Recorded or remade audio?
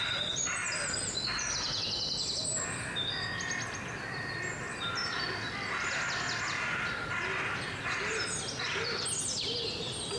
recorded